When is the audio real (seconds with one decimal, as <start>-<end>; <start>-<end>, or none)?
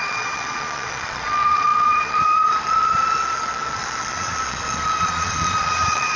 none